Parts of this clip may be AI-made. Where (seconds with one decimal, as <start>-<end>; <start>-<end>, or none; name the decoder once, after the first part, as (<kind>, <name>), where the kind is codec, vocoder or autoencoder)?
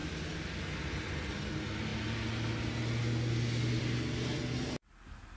none